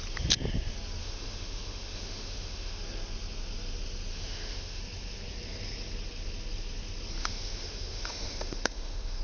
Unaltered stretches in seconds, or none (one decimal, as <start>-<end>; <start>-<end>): 0.0-1.0; 2.8-4.1; 4.8-7.2